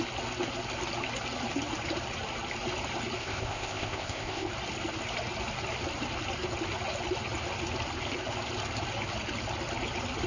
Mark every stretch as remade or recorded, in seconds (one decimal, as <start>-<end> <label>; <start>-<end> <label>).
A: 0.0-3.2 recorded; 3.2-4.5 remade; 4.5-10.3 recorded